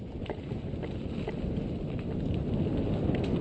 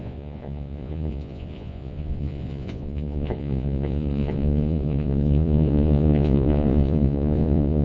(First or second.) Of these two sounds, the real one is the first